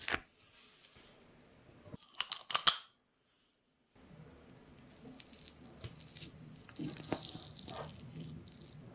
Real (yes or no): yes